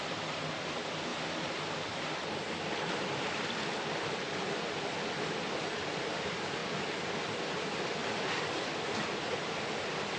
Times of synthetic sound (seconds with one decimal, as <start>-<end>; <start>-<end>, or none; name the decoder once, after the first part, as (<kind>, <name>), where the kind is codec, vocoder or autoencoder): 0.0-10.2 (vocoder, BigVGAN v2)